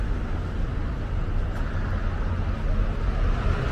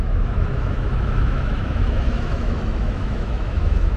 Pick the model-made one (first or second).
second